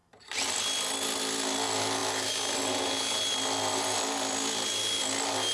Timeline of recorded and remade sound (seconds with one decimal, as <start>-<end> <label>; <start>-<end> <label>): 0.0-5.5 recorded